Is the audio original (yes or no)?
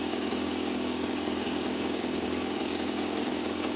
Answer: no